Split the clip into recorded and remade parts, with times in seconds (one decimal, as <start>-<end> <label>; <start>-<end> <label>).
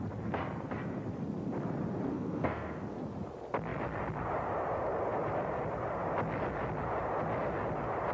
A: 0.0-2.1 recorded; 2.1-2.8 remade; 2.8-8.1 recorded